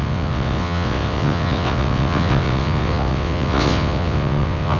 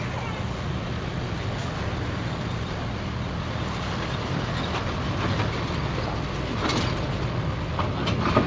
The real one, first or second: second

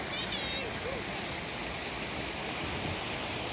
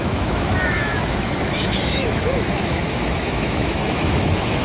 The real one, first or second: first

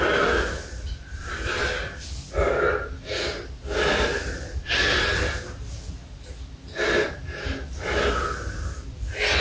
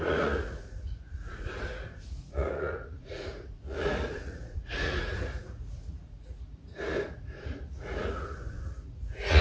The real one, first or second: first